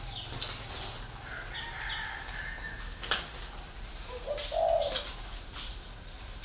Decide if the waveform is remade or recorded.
recorded